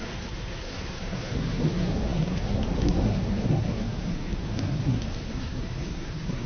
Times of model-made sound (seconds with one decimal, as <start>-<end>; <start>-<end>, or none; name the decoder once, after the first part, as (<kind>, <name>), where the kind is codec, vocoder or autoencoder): 0.0-6.5 (codec, SNAC)